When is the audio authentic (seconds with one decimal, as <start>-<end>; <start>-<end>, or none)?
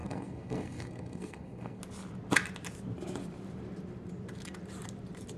1.8-5.4